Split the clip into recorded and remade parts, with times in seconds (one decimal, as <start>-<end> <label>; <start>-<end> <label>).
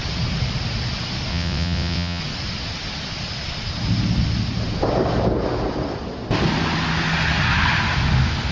0.0-1.3 recorded; 1.3-2.2 remade; 2.2-8.5 recorded